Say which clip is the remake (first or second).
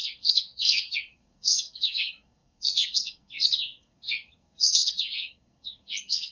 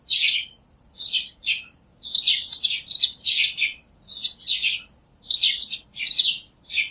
first